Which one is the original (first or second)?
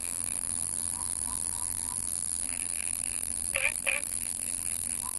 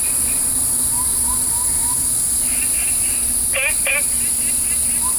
second